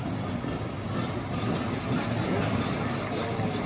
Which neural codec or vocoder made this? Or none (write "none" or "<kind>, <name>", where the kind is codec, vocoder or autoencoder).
none